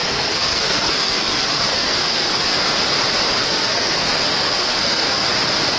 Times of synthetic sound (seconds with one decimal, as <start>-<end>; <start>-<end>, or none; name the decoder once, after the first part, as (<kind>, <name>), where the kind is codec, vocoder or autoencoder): 0.0-2.7 (codec, SNAC); 3.4-5.3